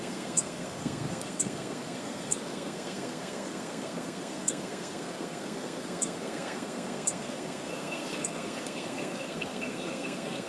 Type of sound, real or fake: fake